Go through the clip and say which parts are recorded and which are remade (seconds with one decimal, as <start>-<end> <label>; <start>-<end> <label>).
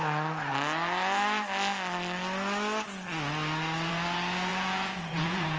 0.0-4.5 recorded; 4.5-5.6 remade